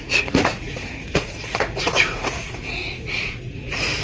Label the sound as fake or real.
fake